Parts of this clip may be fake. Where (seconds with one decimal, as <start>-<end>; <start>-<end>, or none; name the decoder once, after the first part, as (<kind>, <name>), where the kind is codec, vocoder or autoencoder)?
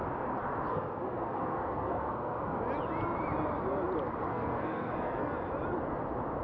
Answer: 0.7-2.6 (codec, SNAC); 4.3-5.2